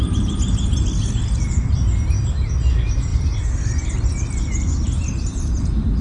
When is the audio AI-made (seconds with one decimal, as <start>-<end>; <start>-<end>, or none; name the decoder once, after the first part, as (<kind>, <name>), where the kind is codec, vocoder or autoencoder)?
none